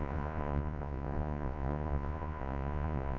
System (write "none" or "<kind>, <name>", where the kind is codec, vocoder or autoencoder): vocoder, Vocos